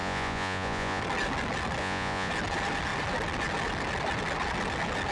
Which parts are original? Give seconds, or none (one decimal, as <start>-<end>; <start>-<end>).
1.0-1.8; 2.3-5.1